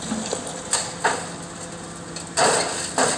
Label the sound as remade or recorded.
recorded